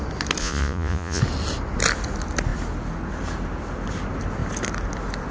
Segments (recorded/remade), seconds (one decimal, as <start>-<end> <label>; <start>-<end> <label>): 0.0-0.4 recorded; 0.4-1.2 remade; 1.2-5.3 recorded